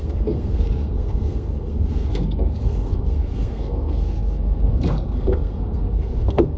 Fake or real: fake